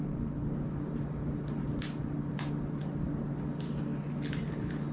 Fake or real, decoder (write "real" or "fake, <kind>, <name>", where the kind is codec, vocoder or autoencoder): real